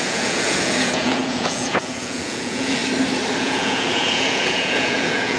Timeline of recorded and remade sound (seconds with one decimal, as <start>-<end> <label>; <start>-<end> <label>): 0.0-2.8 remade; 2.8-3.4 recorded; 3.4-5.4 remade